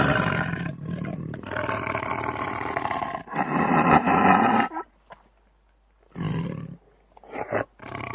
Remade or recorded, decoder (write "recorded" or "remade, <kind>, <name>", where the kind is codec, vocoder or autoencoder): recorded